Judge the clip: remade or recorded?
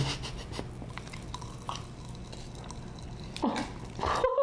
recorded